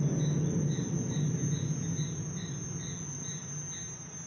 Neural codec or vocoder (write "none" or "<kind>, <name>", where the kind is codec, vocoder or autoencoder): none